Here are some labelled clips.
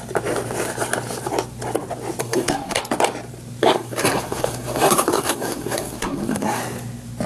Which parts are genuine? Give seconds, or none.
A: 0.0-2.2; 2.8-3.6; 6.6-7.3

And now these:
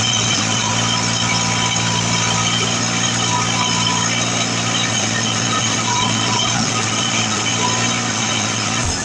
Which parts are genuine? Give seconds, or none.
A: 0.7-4.9; 7.5-8.1

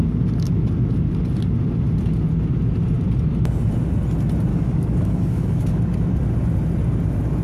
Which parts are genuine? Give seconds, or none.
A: 0.0-4.5; 5.8-7.4